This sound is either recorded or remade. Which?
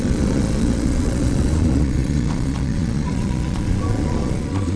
remade